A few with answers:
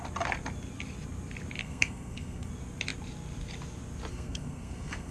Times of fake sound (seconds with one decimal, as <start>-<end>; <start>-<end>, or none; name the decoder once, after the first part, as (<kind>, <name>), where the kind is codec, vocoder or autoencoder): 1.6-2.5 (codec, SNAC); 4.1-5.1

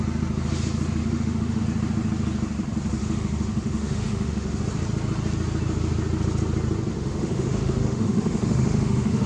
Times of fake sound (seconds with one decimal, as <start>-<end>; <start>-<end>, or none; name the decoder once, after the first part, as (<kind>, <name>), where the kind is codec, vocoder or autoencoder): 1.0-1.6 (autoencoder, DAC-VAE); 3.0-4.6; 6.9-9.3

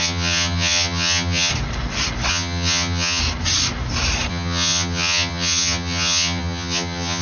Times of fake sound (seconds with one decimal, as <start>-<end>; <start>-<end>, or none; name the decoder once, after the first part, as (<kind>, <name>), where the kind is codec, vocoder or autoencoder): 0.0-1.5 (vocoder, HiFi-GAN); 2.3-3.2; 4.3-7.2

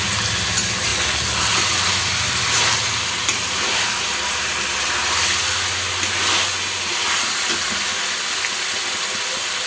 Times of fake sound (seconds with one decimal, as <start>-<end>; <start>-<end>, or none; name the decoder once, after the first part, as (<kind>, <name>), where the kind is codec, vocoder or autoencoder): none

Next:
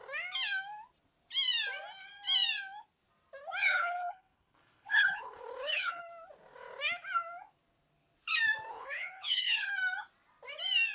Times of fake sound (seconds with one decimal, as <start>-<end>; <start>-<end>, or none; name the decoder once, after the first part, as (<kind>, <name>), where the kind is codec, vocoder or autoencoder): 3.6-6.0 (codec, HILCodec); 8.7-9.7

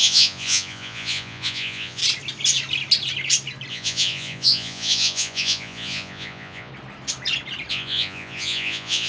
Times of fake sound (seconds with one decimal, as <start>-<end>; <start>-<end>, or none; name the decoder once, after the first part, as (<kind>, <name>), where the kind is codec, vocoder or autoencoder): 0.0-2.0 (vocoder, Vocos); 3.7-6.7; 7.7-9.1

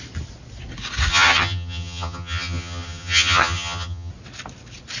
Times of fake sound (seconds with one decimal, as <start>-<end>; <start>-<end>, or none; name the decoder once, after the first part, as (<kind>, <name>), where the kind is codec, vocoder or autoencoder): 1.1-4.1 (vocoder, HiFi-GAN)